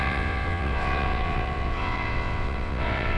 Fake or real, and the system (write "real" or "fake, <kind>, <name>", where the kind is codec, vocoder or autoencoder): fake, vocoder, WaveNeXt